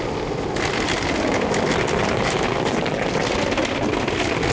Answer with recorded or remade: recorded